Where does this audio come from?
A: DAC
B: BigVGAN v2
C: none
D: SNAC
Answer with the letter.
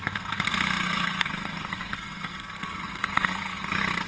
D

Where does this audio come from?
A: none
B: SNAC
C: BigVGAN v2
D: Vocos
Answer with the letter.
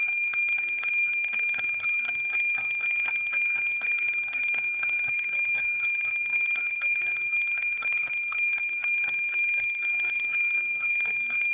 B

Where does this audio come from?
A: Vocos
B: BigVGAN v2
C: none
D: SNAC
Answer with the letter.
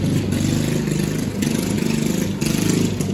C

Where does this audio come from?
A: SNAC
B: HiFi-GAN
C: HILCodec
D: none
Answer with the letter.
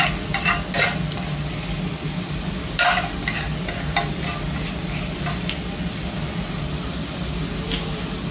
D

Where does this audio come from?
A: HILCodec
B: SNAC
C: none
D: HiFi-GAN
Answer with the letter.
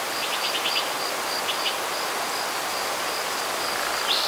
C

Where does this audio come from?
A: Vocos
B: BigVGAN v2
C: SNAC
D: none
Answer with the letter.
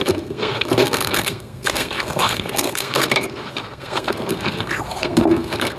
C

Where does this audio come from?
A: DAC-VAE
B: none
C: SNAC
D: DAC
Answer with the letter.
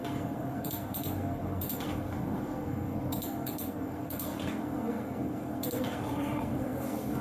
C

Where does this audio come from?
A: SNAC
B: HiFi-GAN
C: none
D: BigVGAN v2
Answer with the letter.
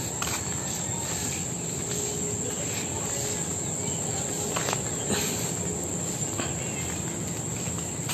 C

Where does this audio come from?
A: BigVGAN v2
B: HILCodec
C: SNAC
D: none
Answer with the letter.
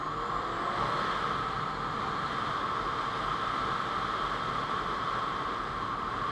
D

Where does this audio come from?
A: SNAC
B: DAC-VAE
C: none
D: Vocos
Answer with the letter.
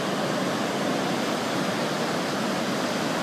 C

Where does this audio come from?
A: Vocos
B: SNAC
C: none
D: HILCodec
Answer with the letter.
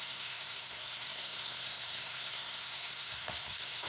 B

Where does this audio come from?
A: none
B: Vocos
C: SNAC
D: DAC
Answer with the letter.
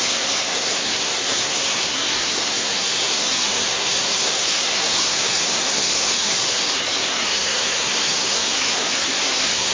C